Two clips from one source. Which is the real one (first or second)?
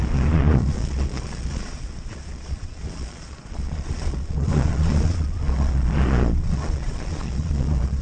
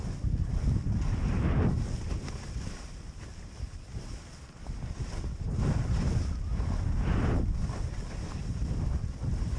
second